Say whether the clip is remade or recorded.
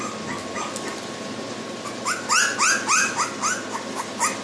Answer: recorded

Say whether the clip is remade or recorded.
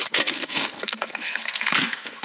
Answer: remade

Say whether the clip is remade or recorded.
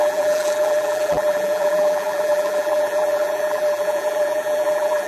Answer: remade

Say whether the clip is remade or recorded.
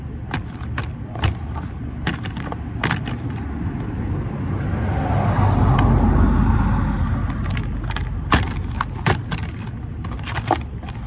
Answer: recorded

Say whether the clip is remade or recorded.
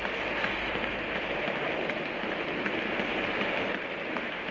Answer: recorded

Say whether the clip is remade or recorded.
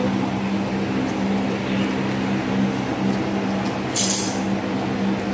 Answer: recorded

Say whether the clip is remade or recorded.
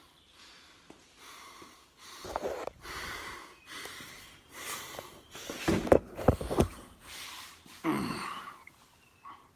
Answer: remade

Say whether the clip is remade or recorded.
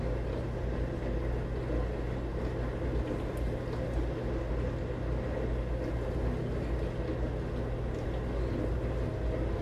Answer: recorded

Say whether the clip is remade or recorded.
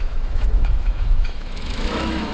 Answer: remade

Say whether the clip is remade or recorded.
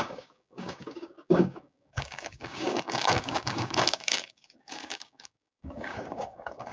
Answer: remade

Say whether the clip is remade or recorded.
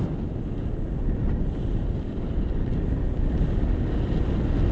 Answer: recorded